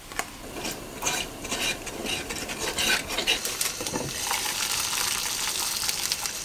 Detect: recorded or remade recorded